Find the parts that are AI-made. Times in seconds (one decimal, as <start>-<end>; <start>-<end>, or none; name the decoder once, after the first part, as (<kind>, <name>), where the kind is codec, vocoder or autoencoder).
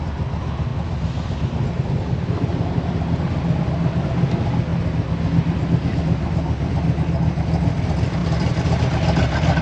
none